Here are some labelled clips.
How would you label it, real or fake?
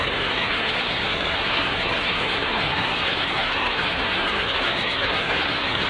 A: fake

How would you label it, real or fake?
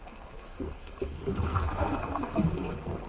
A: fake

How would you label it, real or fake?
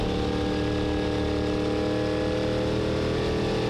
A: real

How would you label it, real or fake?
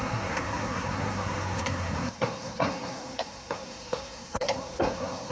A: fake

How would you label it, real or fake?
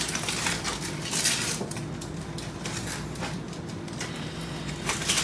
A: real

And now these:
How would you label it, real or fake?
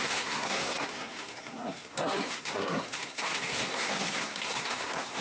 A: fake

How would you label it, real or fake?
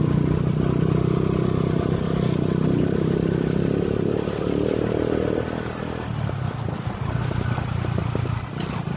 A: real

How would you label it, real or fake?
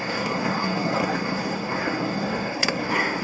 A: fake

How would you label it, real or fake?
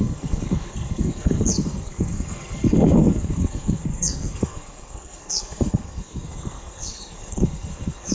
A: fake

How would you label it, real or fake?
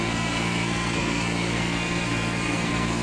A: fake